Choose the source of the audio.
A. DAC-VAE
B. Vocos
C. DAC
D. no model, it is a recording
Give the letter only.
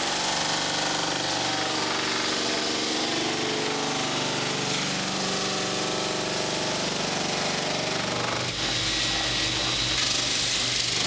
D